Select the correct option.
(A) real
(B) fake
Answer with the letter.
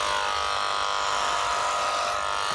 A